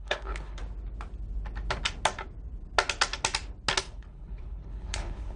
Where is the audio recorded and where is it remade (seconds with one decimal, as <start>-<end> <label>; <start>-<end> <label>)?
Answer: 0.0-0.6 remade; 0.6-3.8 recorded; 3.8-5.4 remade